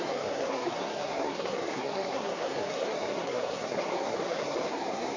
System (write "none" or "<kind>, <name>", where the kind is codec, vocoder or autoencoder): codec, SNAC